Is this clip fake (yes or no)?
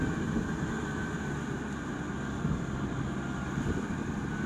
no